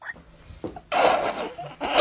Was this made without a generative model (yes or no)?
yes